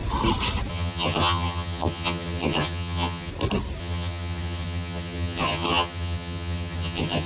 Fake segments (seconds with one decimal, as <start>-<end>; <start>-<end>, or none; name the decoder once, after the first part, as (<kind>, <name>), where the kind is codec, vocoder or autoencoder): 0.7-3.3 (vocoder, HiFi-GAN); 3.8-7.3